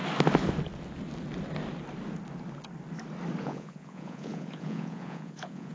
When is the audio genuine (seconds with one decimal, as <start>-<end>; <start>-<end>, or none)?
0.0-3.4